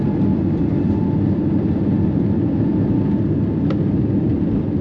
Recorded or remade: recorded